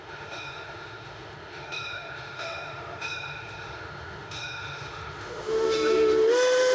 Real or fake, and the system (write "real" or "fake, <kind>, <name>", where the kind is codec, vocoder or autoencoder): fake, autoencoder, DAC-VAE